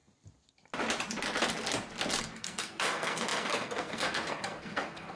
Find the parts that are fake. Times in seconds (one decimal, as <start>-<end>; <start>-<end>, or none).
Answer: 2.2-5.2